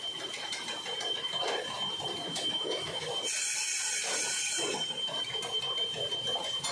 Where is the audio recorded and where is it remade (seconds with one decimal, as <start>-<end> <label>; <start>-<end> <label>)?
0.0-2.3 recorded; 2.3-3.1 remade; 3.1-6.7 recorded